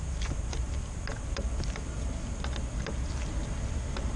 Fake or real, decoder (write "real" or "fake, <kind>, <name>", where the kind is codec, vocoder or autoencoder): real